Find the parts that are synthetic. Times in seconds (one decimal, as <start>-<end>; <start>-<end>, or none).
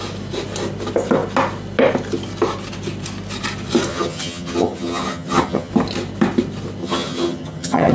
3.9-5.7; 6.8-7.9